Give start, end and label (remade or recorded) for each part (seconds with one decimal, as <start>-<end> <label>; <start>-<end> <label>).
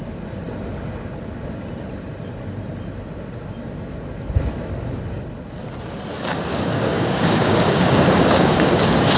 0.0-6.1 recorded; 6.1-9.2 remade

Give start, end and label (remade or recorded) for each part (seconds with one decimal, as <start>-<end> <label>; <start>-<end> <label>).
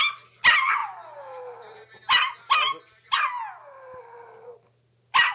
0.0-5.3 recorded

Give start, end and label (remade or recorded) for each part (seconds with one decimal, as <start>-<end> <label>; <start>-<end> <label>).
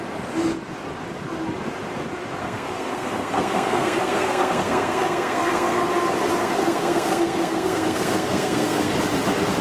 0.0-2.4 recorded; 2.4-5.9 remade; 5.9-6.4 recorded; 6.4-8.9 remade; 8.9-9.6 recorded